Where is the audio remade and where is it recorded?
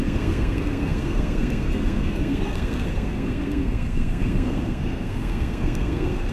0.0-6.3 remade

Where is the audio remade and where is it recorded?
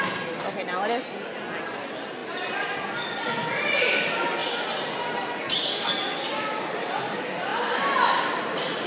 0.0-8.9 recorded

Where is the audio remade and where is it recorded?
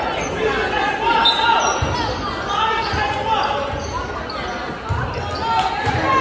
0.0-6.2 recorded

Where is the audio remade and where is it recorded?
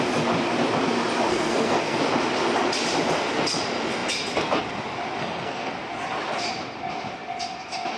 0.0-1.3 recorded; 1.3-2.0 remade; 2.0-5.2 recorded; 5.2-5.7 remade; 5.7-8.0 recorded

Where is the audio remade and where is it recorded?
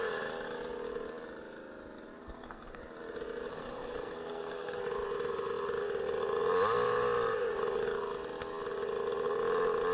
0.0-2.2 recorded; 2.2-2.8 remade; 2.8-3.5 recorded; 3.5-4.8 remade; 4.8-9.9 recorded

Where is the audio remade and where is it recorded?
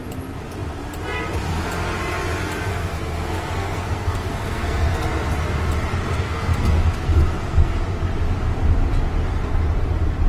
0.0-2.7 recorded; 2.7-5.0 remade; 5.0-6.1 recorded; 6.1-7.7 remade; 7.7-10.3 recorded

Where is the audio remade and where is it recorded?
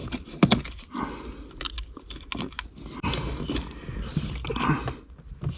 0.0-5.6 recorded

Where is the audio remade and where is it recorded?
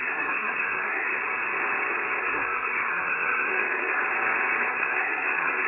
0.0-1.2 remade; 1.2-2.2 recorded; 2.2-4.0 remade; 4.0-4.7 recorded; 4.7-5.7 remade